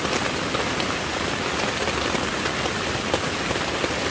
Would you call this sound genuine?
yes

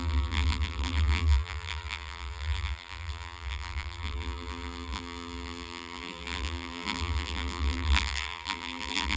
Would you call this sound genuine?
no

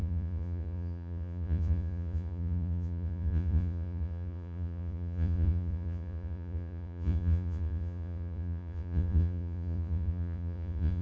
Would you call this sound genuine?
no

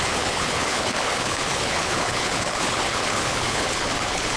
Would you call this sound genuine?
no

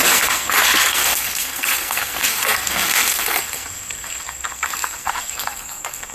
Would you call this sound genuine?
no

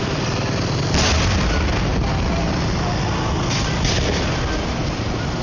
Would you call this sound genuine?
yes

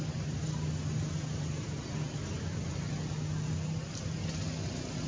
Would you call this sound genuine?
yes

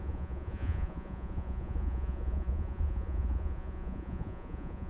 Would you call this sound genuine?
no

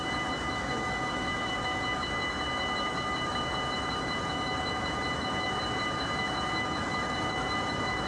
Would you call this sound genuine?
no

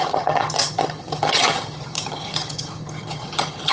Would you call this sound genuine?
no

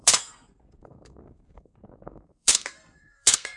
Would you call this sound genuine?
no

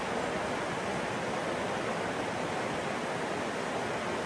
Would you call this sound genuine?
yes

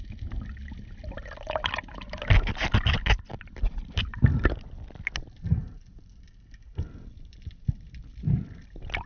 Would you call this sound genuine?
yes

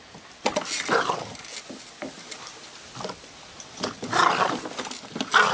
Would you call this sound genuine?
yes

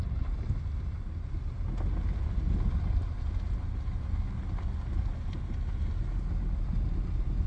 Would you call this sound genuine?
yes